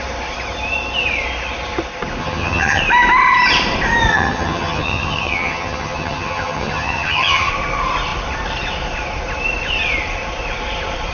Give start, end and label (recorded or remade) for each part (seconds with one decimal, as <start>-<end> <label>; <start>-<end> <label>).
0.0-2.2 recorded; 2.2-2.8 remade; 2.8-4.1 recorded; 4.1-7.5 remade; 7.5-11.1 recorded

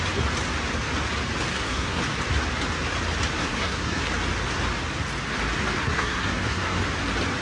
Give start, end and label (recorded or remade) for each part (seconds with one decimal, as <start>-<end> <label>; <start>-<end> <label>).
0.0-1.5 recorded; 1.5-2.0 remade; 2.0-3.4 recorded; 3.4-4.0 remade; 4.0-5.8 recorded; 5.8-6.8 remade; 6.8-7.4 recorded

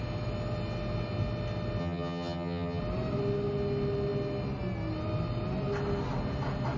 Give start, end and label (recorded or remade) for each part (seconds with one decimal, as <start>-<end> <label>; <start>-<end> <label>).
0.0-1.8 recorded; 1.8-2.8 remade; 2.8-6.8 recorded

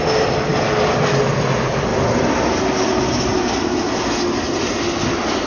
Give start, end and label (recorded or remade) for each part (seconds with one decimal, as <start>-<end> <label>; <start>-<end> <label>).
0.0-5.5 recorded

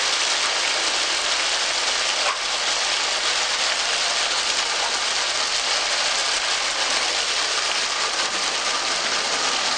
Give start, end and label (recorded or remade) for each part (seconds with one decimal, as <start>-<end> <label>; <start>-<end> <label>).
0.0-9.8 recorded

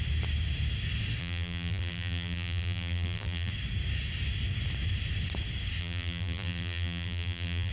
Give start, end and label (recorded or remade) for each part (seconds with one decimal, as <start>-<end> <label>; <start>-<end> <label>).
0.0-1.2 recorded; 1.2-3.5 remade; 3.5-5.8 recorded; 5.8-7.7 remade